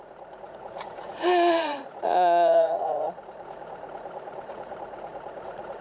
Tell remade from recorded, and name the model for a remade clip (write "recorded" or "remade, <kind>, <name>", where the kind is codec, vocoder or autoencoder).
remade, vocoder, Vocos